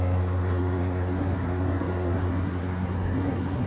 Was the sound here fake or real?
fake